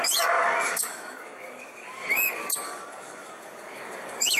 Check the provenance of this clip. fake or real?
fake